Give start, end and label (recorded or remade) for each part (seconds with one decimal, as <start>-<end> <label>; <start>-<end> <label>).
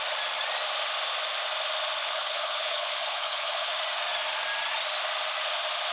0.0-2.0 recorded; 2.0-3.7 remade; 3.7-5.9 recorded